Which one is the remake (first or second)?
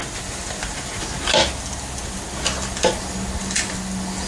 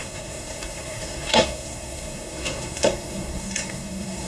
second